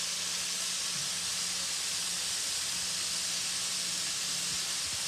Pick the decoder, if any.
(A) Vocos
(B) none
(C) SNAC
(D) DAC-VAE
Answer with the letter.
B